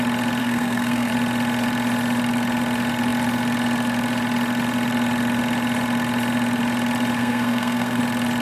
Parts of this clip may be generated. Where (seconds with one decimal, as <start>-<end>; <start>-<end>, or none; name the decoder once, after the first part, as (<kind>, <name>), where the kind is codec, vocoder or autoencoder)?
0.4-1.1 (codec, SNAC); 7.2-8.0